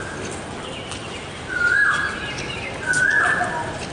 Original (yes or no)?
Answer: yes